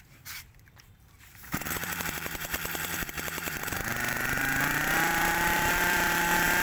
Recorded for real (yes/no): no